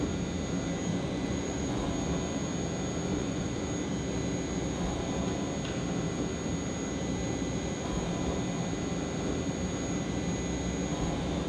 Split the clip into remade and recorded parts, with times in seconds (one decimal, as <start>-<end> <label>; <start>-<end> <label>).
0.0-0.9 recorded; 0.9-1.8 remade; 1.8-3.1 recorded; 3.1-3.7 remade; 3.7-11.5 recorded